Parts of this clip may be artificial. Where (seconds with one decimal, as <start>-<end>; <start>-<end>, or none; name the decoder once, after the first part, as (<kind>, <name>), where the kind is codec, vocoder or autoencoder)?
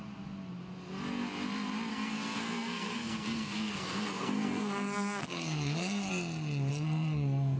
1.9-6.1 (codec, SNAC); 6.7-7.6